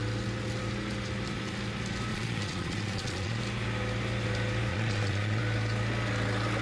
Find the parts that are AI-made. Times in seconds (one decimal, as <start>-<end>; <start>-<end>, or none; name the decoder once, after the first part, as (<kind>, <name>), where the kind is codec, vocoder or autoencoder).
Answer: 2.1-3.4 (vocoder, Vocos); 4.7-5.4